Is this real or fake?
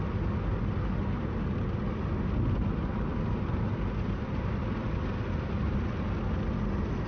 real